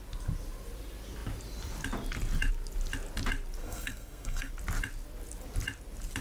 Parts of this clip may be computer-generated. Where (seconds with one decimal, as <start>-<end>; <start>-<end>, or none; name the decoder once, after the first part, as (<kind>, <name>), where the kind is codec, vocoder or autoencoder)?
3.6-4.5 (codec, SNAC)